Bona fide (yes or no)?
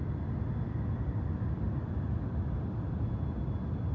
yes